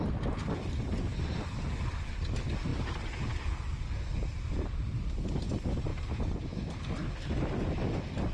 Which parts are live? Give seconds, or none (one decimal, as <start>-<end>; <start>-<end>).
0.0-5.9; 6.7-8.3